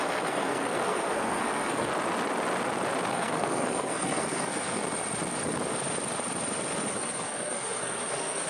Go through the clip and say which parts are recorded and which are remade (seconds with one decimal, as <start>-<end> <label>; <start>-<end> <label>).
0.0-1.9 remade; 1.9-3.1 recorded; 3.1-4.8 remade; 4.8-6.9 recorded; 6.9-8.5 remade